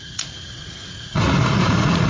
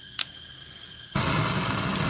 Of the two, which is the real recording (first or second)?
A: second